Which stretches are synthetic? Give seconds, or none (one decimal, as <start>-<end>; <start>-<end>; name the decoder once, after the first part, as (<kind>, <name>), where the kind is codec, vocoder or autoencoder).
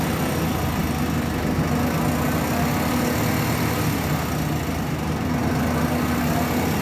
none